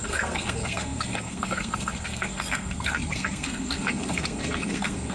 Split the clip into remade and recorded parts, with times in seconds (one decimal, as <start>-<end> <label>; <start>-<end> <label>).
0.0-5.1 remade